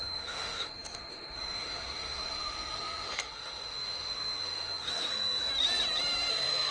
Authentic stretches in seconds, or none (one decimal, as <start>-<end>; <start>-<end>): 5.5-6.3